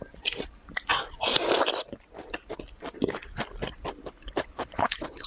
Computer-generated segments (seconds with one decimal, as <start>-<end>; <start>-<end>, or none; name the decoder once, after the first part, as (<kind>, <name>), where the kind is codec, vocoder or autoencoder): 4.0-5.3 (codec, HILCodec)